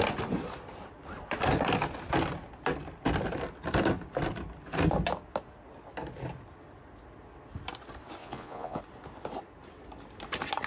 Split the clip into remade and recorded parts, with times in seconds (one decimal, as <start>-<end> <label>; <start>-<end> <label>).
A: 0.0-8.2 recorded; 8.2-8.8 remade; 8.8-10.7 recorded